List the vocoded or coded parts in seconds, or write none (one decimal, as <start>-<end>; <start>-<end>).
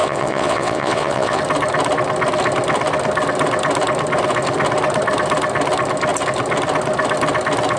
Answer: 0.0-1.4